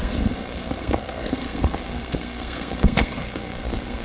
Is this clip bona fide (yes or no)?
no